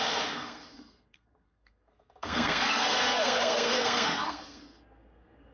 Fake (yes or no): yes